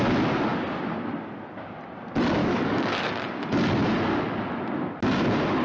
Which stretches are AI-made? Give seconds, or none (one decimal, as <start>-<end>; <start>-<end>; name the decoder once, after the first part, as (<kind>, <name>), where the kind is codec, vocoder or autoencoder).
2.4-3.1 (codec, DAC)